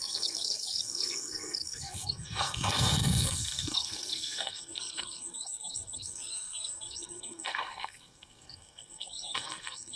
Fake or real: fake